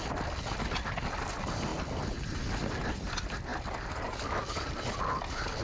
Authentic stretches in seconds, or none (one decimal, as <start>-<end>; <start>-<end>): 0.0-5.6